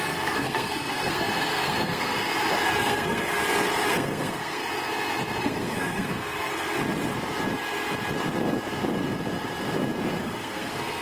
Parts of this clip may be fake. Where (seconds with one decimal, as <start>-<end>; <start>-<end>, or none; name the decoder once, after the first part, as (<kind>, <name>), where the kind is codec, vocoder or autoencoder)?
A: 0.0-2.3 (codec, SNAC); 2.8-3.4; 3.9-4.6; 5.4-6.8; 10.2-11.0